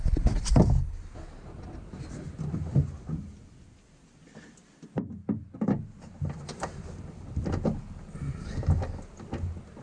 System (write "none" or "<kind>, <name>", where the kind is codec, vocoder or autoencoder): none